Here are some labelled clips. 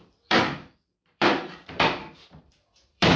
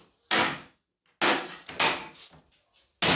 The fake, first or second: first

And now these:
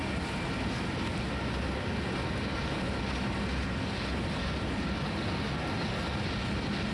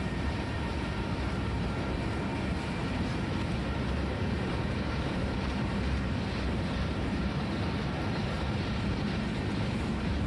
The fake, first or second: second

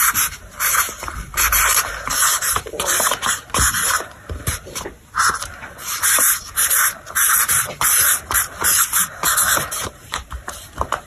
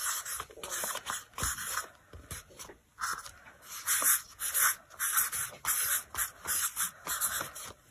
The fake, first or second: first